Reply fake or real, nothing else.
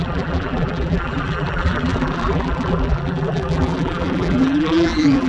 fake